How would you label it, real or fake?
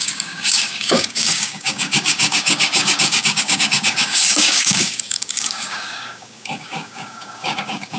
fake